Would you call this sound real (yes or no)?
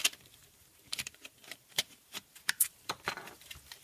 no